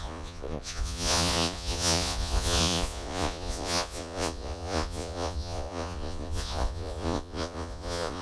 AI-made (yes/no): yes